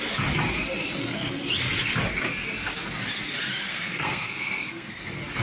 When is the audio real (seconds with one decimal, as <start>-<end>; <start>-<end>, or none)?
0.0-3.7; 4.9-5.4